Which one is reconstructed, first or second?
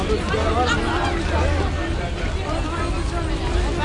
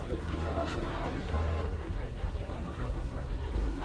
second